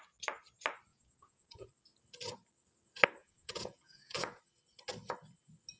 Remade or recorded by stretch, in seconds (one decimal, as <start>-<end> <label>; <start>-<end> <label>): 0.0-0.9 recorded; 0.9-1.7 remade; 1.7-3.2 recorded; 3.2-4.4 remade; 4.4-5.8 recorded

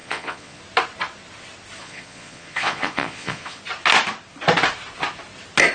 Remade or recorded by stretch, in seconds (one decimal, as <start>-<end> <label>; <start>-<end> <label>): 0.0-0.6 remade; 0.6-1.8 recorded; 1.8-3.6 remade; 3.6-5.7 recorded

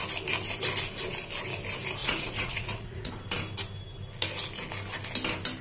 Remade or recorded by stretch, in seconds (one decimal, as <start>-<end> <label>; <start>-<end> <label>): 0.0-2.0 recorded; 2.0-3.1 remade; 3.1-5.6 recorded

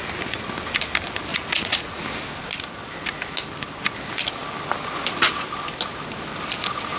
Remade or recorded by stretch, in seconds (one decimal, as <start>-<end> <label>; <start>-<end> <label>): 0.0-1.3 recorded; 1.3-2.0 remade; 2.0-7.0 recorded